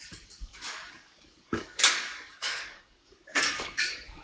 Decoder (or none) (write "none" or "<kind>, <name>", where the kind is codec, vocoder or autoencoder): codec, DAC